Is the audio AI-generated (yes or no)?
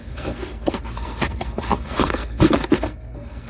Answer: yes